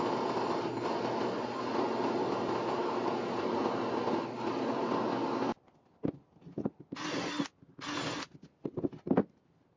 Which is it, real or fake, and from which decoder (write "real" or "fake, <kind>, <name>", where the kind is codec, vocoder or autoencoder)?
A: real